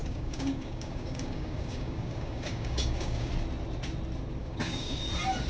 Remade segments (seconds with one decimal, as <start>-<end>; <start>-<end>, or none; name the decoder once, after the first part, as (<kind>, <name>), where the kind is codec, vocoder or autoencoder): 0.0-3.3 (codec, DAC); 4.4-5.1